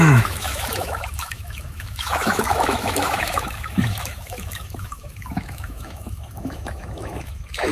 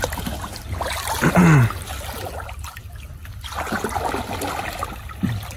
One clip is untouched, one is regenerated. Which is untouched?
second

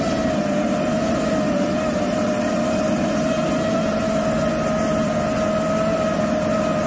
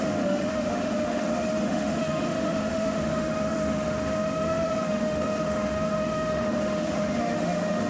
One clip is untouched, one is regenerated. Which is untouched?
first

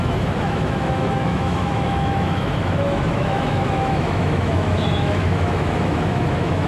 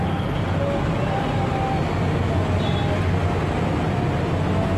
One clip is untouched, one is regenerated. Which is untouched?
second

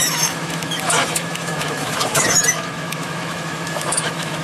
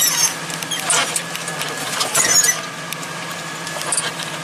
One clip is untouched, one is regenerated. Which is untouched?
second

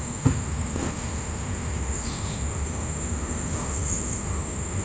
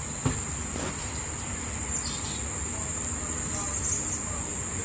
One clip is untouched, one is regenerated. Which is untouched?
second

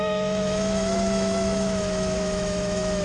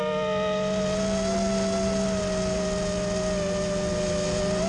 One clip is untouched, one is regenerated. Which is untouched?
second